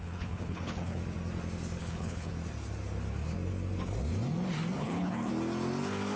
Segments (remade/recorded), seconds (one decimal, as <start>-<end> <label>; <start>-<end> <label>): 0.0-1.0 remade; 1.0-1.8 recorded; 1.8-2.3 remade; 2.3-4.8 recorded; 4.8-5.3 remade; 5.3-6.2 recorded